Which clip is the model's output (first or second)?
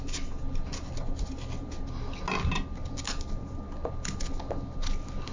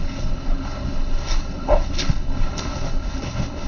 second